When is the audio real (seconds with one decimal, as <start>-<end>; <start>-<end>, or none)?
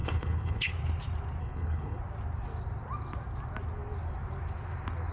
0.7-1.4; 2.0-5.1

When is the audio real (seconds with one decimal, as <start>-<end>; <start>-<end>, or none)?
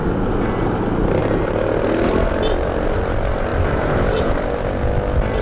0.0-3.5; 4.3-5.4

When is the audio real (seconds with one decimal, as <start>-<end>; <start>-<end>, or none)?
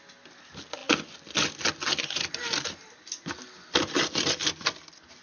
0.0-5.2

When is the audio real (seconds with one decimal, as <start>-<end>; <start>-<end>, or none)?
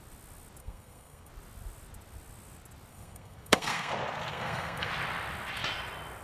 0.0-0.6; 1.3-2.9; 3.9-4.3; 4.9-6.2